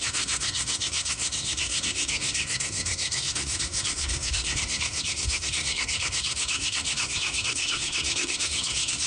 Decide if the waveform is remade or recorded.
remade